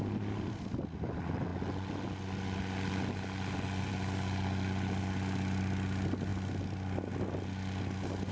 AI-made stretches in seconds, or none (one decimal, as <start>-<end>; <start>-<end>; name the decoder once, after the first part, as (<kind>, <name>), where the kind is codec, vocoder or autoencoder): none